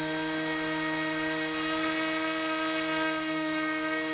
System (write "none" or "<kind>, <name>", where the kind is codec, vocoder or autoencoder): none